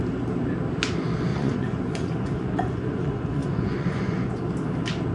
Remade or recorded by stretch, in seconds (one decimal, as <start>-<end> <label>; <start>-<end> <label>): 0.0-1.3 recorded; 1.3-4.4 remade; 4.4-5.1 recorded